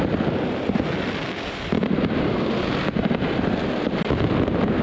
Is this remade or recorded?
recorded